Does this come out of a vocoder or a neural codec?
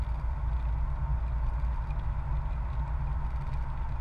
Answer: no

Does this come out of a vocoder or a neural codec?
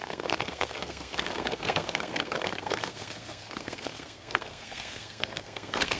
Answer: yes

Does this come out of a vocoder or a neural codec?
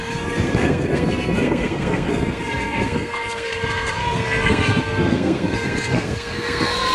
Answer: yes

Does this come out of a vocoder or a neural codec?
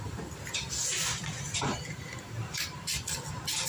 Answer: no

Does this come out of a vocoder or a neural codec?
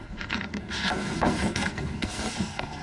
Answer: yes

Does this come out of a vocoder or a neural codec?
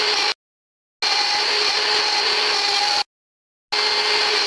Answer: no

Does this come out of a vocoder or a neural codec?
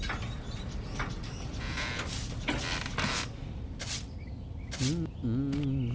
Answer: no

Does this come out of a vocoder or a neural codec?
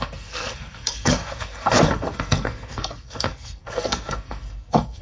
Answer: yes